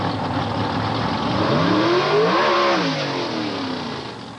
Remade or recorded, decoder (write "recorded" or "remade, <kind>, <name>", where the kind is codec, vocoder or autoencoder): recorded